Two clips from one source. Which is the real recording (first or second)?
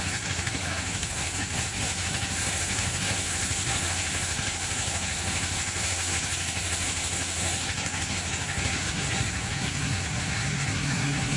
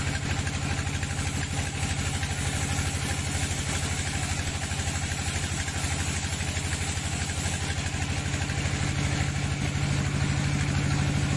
second